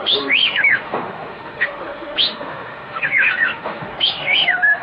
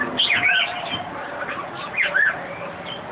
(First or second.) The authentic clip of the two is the second